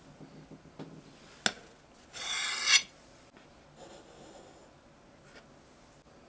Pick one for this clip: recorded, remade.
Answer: recorded